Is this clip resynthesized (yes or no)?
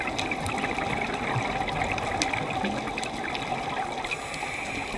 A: no